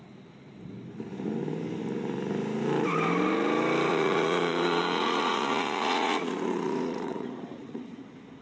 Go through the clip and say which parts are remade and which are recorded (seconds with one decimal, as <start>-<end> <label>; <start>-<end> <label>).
0.0-3.9 recorded; 3.9-8.0 remade; 8.0-8.4 recorded